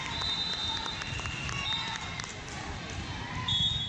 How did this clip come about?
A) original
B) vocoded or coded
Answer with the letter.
B